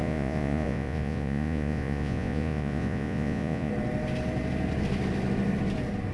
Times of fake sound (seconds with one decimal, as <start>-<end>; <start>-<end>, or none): 0.0-3.7

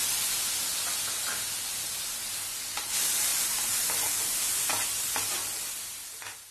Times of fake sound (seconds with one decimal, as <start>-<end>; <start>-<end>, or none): 3.3-4.2

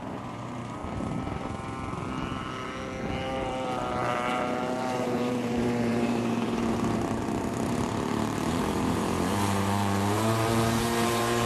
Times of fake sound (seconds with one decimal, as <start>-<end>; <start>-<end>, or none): 0.0-0.8; 4.3-11.5

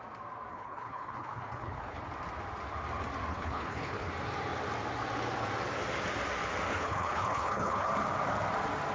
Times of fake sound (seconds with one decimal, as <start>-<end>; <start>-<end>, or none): 0.5-2.0; 3.3-4.1; 6.7-7.9

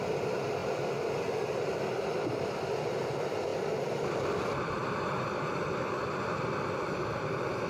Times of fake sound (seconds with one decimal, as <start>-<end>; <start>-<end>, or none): 0.0-0.6; 1.2-3.5; 4.0-4.8; 6.8-7.7

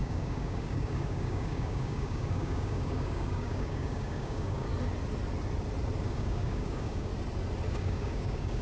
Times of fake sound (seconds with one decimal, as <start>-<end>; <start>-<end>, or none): 0.0-4.7; 6.0-7.1; 7.7-8.6

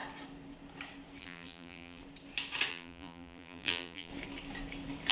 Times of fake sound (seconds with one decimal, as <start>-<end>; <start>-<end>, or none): 1.2-2.0; 2.7-4.1

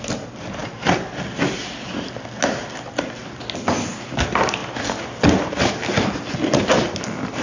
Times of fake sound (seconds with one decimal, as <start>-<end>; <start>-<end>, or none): none